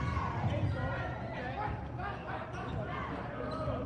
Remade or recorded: recorded